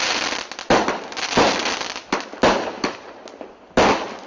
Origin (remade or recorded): recorded